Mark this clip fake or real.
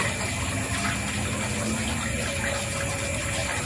real